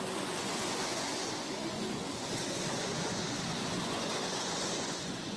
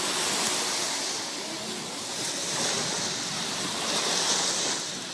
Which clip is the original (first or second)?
second